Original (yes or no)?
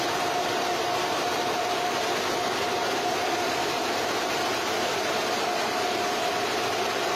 yes